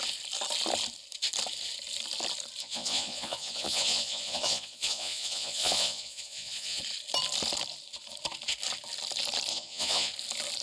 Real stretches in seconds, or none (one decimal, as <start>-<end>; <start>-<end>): 0.0-2.6; 6.8-9.5; 10.1-10.6